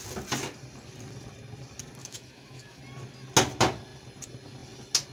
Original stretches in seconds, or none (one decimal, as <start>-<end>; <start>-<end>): 0.0-2.0; 2.8-5.1

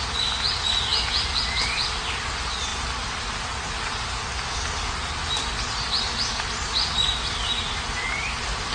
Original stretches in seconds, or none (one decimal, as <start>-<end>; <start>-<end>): 0.0-8.7